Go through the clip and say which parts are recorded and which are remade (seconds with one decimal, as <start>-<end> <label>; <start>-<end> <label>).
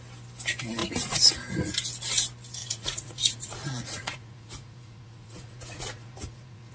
0.0-0.8 recorded; 0.8-1.3 remade; 1.3-2.6 recorded; 2.6-6.7 remade